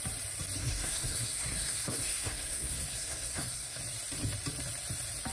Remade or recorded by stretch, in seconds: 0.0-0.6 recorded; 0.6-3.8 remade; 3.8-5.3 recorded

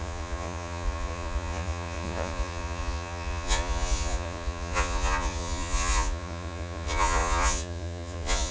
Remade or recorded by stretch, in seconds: 0.0-8.5 remade

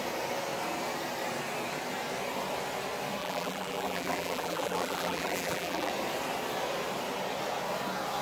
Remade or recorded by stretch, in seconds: 0.0-3.2 recorded; 3.2-5.9 remade; 5.9-8.2 recorded

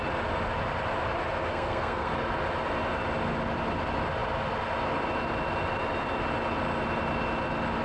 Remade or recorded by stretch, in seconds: 0.0-1.5 recorded; 1.5-2.1 remade; 2.1-7.8 recorded

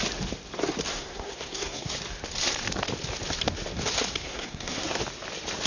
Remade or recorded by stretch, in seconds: 0.0-0.9 recorded; 0.9-2.0 remade; 2.0-4.1 recorded; 4.1-5.0 remade; 5.0-5.7 recorded

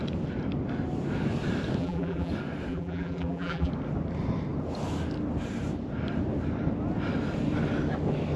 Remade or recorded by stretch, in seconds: 0.0-1.8 recorded; 1.8-2.3 remade; 2.3-2.7 recorded; 2.7-3.7 remade; 3.7-8.4 recorded